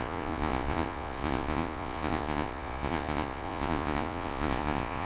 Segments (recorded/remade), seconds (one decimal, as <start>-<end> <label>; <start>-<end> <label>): 0.0-5.0 remade